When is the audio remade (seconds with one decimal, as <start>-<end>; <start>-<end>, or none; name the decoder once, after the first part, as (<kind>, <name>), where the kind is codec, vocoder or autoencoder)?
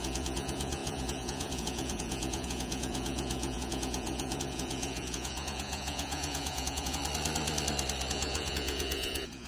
0.0-7.0 (vocoder, Vocos); 8.1-9.5